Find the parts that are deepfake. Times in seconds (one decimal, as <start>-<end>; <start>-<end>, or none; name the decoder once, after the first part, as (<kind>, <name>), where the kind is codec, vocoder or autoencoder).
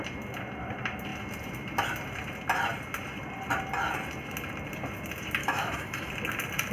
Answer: 5.4-6.1 (autoencoder, DAC-VAE)